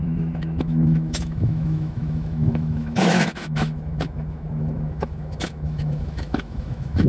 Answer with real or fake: fake